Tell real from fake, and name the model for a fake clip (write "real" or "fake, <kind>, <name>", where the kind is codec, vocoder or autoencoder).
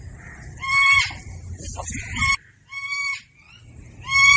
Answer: real